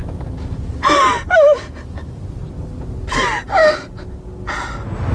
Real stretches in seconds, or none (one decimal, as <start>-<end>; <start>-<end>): 0.0-5.1